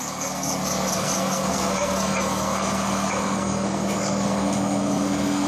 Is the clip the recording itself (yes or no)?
no